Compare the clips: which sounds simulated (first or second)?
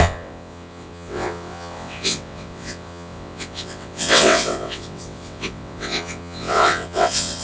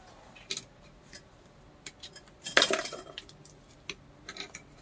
first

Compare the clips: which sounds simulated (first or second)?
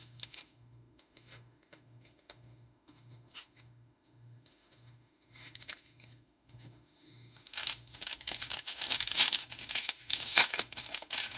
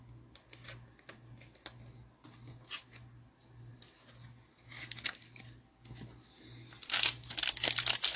first